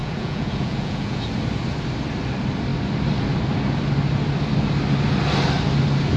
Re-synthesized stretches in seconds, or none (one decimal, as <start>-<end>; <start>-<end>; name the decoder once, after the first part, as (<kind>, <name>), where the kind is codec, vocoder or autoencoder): 0.0-1.3 (vocoder, Vocos)